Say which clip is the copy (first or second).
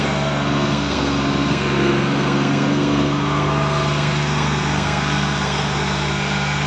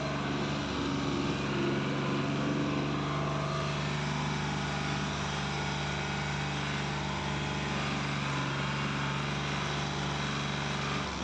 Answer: first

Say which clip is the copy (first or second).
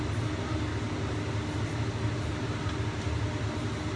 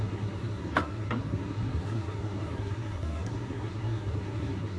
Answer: second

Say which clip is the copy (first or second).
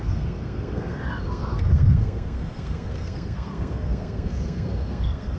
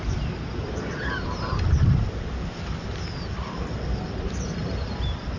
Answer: first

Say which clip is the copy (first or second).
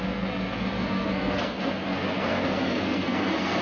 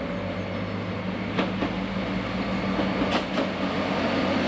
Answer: first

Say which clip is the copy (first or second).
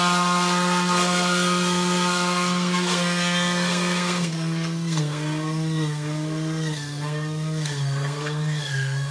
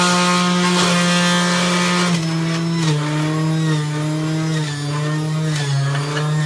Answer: first